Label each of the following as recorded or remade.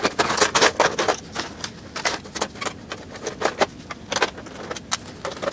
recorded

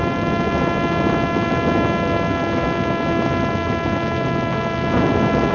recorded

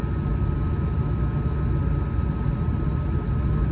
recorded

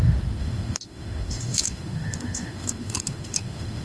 remade